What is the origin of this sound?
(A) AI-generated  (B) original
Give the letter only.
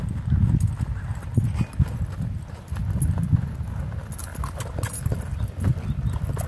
B